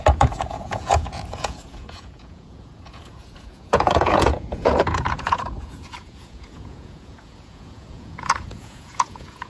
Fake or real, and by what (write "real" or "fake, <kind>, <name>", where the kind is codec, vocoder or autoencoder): fake, vocoder, Vocos